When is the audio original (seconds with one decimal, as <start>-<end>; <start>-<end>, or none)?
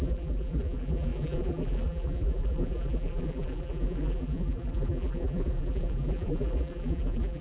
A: none